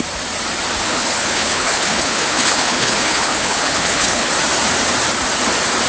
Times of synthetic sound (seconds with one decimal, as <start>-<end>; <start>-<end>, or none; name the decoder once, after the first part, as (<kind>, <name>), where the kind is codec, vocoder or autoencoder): 0.8-4.3 (codec, HILCodec)